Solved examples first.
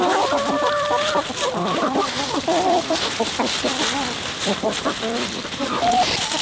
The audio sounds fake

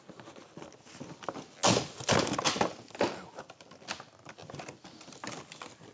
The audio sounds real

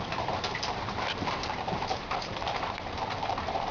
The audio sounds fake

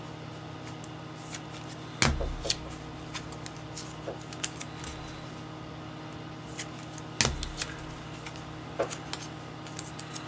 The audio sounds real